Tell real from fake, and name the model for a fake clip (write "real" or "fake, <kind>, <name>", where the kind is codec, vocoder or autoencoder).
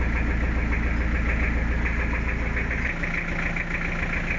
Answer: real